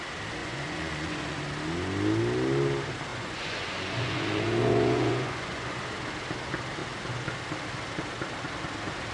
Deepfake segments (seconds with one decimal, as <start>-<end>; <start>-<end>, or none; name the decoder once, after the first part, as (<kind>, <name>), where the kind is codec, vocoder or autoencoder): 0.4-1.4 (vocoder, Vocos); 3.1-5.8